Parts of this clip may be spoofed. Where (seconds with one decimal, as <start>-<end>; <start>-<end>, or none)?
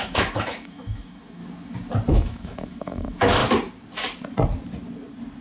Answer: 0.0-1.4; 2.1-3.4